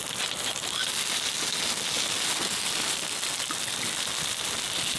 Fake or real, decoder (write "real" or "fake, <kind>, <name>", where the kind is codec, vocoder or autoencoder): real